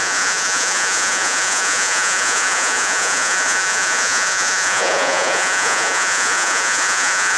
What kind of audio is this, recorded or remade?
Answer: remade